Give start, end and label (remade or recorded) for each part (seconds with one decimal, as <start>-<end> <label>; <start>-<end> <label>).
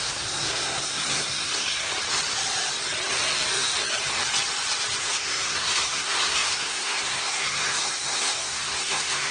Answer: 0.0-1.9 remade; 1.9-5.0 recorded; 5.0-9.3 remade